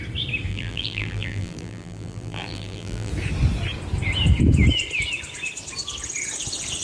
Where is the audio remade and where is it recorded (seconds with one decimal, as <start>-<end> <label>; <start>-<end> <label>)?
0.0-0.5 recorded; 0.5-3.1 remade; 3.1-6.8 recorded